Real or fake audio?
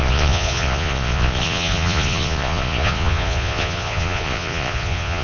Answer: fake